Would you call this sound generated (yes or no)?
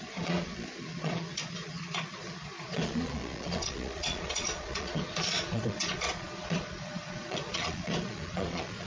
yes